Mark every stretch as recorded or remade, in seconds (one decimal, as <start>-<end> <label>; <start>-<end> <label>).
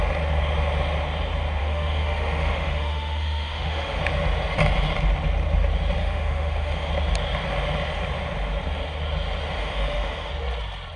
0.0-1.6 recorded; 1.6-4.0 remade; 4.0-6.0 recorded; 6.0-6.9 remade; 6.9-9.6 recorded; 9.6-10.3 remade; 10.3-11.0 recorded